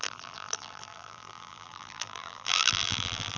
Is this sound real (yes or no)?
no